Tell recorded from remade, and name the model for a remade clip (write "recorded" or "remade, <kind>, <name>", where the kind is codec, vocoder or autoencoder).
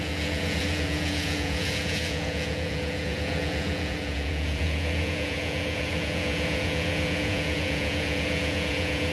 remade, vocoder, Vocos